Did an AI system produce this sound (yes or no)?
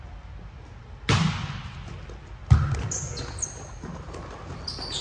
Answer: no